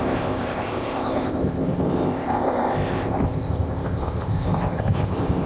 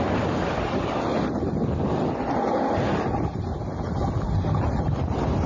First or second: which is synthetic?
first